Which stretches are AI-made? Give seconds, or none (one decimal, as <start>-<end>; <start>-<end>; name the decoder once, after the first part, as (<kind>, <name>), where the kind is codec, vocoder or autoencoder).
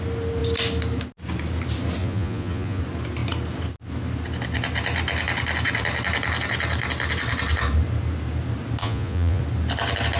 2.0-2.8 (vocoder, Vocos); 8.8-9.4